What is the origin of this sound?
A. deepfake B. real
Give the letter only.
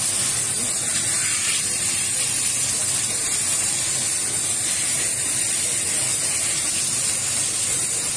B